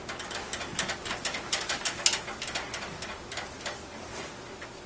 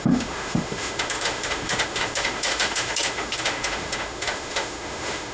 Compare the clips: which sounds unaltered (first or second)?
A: first